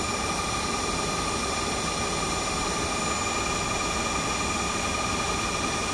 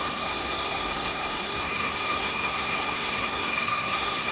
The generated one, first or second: second